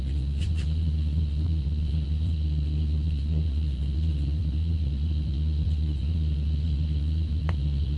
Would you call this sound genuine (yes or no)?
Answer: no